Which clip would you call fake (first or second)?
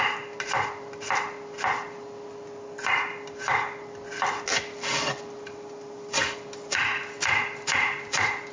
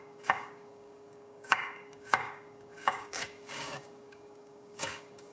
second